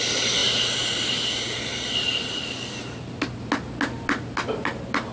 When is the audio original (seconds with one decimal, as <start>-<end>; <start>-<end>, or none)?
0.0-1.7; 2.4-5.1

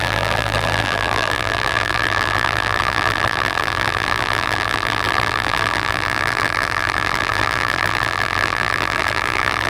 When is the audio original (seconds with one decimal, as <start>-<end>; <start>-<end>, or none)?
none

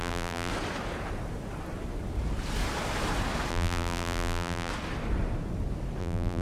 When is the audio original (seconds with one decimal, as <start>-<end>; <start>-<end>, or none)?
0.5-3.5; 4.7-6.0